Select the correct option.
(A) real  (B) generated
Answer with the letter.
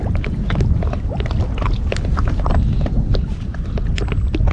A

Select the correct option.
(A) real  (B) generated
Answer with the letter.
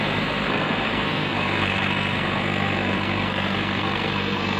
B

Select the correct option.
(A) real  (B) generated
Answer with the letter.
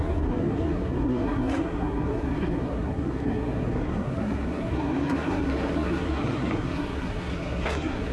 B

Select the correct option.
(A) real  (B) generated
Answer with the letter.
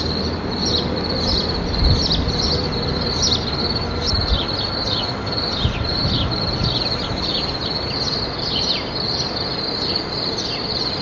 A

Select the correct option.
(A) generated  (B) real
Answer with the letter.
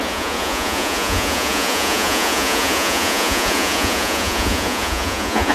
A